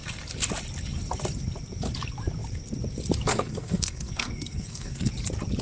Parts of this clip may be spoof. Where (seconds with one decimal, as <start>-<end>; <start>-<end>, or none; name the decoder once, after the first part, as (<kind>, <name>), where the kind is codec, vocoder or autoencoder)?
3.3-5.1 (codec, SNAC)